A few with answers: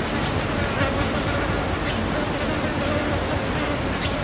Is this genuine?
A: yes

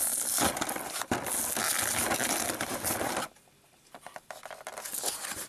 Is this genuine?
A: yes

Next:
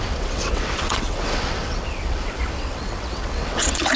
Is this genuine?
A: no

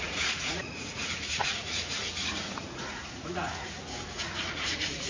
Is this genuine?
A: no